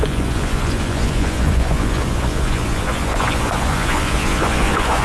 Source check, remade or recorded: remade